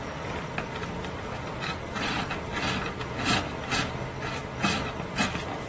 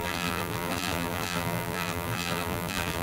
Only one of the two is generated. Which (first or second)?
second